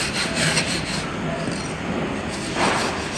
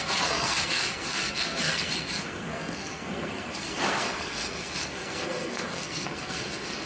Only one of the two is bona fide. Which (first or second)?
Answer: first